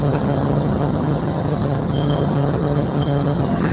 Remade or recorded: remade